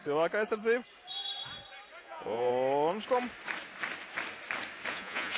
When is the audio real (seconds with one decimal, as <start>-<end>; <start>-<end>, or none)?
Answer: 0.0-2.0; 2.5-4.9